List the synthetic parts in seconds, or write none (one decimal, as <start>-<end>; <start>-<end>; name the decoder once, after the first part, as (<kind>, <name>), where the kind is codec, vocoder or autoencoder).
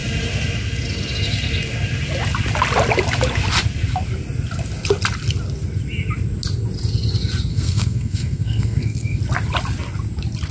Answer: 7.5-9.2 (codec, SNAC)